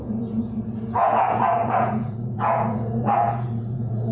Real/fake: fake